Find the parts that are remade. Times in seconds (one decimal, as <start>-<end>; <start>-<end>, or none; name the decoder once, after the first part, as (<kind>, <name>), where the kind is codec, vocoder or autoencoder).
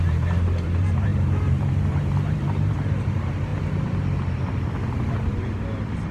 0.0-3.5 (vocoder, BigVGAN v2); 5.1-6.1